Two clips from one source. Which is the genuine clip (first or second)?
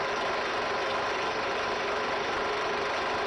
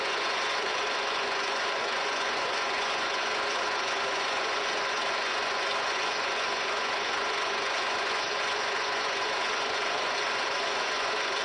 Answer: first